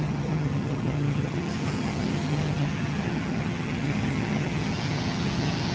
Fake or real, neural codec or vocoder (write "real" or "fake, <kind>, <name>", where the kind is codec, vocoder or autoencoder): fake, vocoder, HiFi-GAN